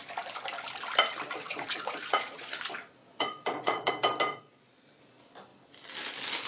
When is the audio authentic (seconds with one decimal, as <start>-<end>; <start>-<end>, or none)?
0.0-1.4; 2.6-3.0; 3.9-4.3; 5.0-6.5